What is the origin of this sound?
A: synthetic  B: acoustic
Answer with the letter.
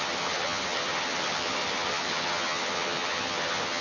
A